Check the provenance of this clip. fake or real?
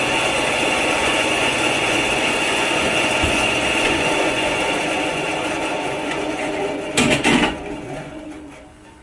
fake